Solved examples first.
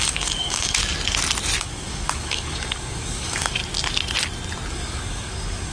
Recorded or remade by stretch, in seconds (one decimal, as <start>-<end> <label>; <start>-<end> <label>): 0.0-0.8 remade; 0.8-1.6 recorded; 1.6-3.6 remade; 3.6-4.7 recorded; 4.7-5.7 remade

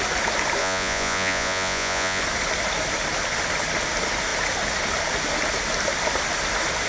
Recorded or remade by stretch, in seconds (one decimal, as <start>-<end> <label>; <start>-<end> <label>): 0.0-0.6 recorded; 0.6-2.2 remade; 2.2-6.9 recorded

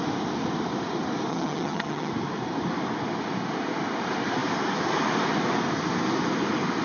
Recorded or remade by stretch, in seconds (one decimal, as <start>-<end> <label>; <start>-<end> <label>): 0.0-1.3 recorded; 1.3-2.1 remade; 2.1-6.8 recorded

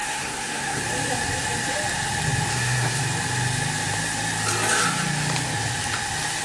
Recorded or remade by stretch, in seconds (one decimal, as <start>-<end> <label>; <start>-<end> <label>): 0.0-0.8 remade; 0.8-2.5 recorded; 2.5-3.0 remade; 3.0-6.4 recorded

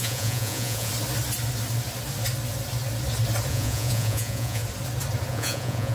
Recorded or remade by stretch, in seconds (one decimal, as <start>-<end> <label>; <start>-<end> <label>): 0.0-0.9 remade; 0.9-3.5 recorded; 3.5-4.6 remade; 4.6-5.3 recorded; 5.3-5.9 remade

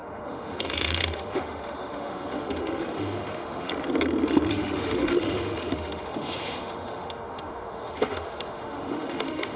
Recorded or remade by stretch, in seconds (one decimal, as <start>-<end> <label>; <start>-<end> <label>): 0.0-3.7 remade; 3.7-4.5 recorded; 4.5-9.6 remade